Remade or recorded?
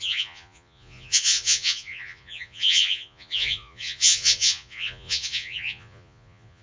remade